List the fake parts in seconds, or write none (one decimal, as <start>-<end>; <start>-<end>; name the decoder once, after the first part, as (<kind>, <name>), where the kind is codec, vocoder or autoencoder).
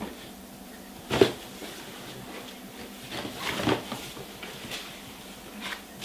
none